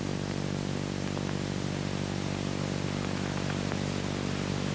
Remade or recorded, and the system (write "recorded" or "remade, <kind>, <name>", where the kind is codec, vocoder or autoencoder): recorded